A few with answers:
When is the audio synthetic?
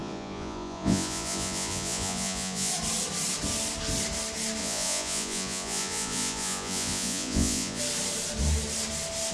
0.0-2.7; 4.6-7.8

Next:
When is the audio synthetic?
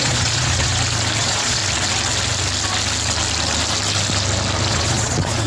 0.0-0.7; 1.2-1.6; 4.7-5.5